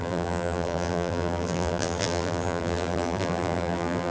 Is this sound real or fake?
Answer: fake